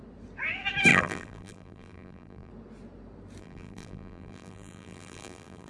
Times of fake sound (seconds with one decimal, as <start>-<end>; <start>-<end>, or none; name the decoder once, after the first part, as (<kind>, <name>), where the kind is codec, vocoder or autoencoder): 0.9-2.5 (vocoder, BigVGAN v2); 3.4-5.7